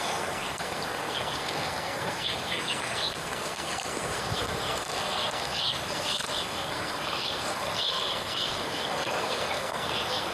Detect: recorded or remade remade